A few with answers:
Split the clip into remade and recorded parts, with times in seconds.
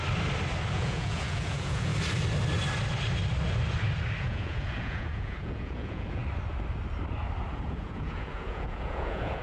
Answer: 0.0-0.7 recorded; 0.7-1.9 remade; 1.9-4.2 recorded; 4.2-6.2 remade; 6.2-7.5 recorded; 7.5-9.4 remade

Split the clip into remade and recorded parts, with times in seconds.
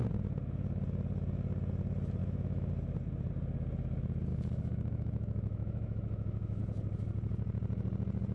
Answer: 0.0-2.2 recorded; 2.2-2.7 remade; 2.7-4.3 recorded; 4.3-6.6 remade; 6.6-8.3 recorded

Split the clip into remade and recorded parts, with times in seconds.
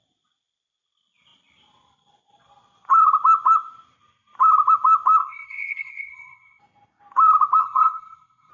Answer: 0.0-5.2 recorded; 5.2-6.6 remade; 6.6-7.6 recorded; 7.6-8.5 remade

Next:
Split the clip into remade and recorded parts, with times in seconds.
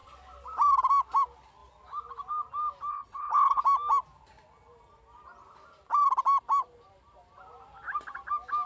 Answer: 0.0-2.9 recorded; 2.9-3.6 remade; 3.6-8.7 recorded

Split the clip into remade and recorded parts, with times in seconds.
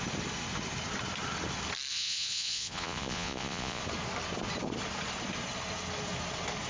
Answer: 0.0-1.9 recorded; 1.9-3.8 remade; 3.8-6.7 recorded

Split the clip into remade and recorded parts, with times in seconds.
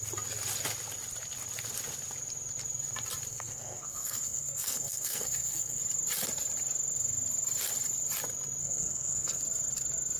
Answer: 0.0-3.3 recorded; 3.3-5.8 remade; 5.8-8.6 recorded; 8.6-9.4 remade; 9.4-10.2 recorded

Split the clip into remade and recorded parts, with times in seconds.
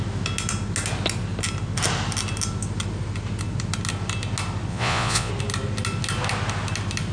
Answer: 0.0-4.7 recorded; 4.7-5.3 remade; 5.3-7.1 recorded